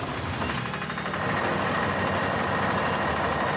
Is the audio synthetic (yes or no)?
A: no